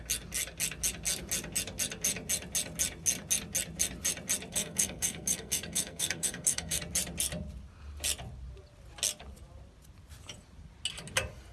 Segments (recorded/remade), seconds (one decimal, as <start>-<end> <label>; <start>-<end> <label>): 0.0-4.5 recorded; 4.5-6.8 remade; 6.8-11.5 recorded